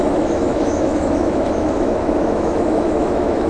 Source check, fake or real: fake